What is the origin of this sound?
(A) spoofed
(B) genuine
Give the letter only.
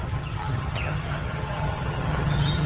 A